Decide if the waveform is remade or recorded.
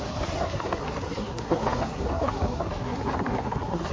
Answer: remade